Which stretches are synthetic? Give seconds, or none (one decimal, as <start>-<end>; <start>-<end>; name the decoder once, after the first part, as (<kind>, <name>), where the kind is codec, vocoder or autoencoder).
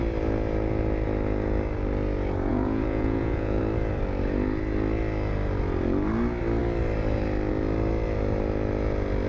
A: 2.5-3.6 (vocoder, Vocos)